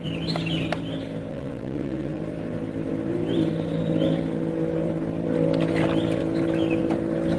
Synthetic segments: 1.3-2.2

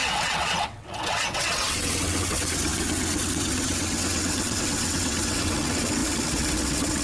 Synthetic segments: 0.0-7.0

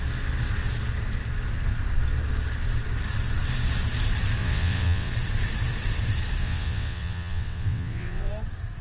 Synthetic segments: 4.4-5.1; 6.4-8.3

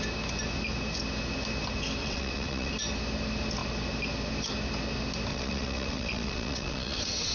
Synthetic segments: 2.0-2.7; 5.3-7.3